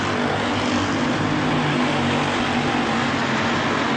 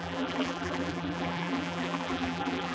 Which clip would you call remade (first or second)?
second